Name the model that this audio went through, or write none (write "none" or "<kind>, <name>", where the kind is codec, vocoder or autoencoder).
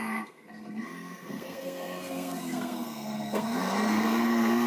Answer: codec, SNAC